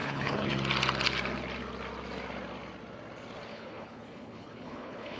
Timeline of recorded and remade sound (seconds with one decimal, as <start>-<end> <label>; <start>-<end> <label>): 0.0-0.5 remade; 0.5-3.5 recorded; 3.5-5.2 remade